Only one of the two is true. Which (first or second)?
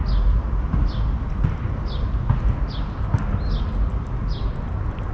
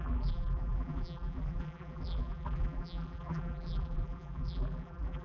first